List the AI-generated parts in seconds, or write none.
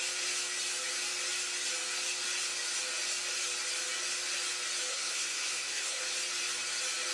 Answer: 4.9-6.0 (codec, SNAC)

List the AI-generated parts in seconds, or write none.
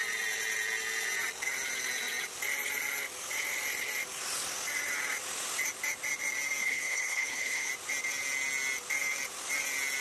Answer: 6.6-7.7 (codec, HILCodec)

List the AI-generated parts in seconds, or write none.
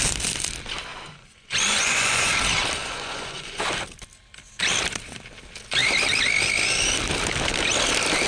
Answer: 0.9-2.3 (vocoder, Vocos); 2.8-3.6